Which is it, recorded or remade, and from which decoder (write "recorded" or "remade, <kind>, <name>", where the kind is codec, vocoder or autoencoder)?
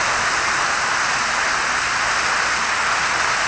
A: recorded